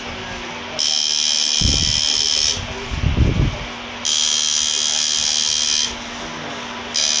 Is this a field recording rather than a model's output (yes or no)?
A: yes